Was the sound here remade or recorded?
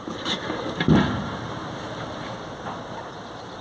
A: remade